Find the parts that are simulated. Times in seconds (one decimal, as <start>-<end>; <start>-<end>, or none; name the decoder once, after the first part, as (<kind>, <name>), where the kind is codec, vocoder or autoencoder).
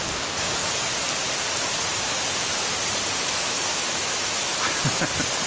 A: 0.0-0.6 (autoencoder, DAC-VAE); 1.9-2.5; 3.2-4.5